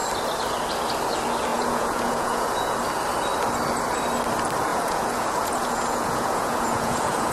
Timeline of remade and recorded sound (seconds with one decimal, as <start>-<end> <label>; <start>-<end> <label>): 0.0-1.5 recorded; 1.5-2.8 remade; 2.8-4.7 recorded; 4.7-7.3 remade